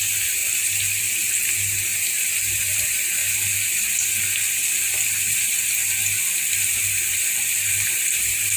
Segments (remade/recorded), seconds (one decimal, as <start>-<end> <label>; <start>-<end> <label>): 0.0-0.4 recorded; 0.4-1.3 remade; 1.3-1.9 recorded; 1.9-2.7 remade; 2.7-8.6 recorded